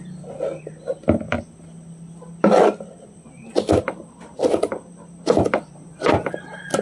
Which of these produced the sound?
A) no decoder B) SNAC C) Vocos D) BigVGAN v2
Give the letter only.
A